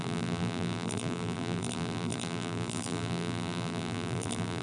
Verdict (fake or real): fake